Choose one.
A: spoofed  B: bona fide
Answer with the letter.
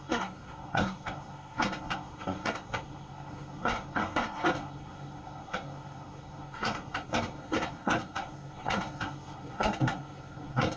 A